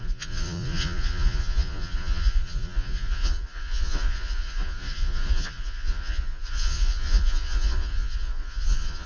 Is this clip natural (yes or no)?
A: no